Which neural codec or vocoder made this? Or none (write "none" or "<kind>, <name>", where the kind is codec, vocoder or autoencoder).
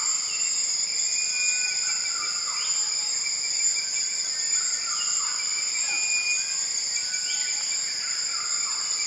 none